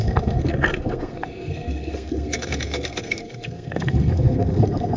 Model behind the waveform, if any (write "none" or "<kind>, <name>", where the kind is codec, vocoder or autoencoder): codec, SNAC